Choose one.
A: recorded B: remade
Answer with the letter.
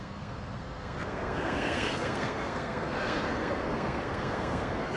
B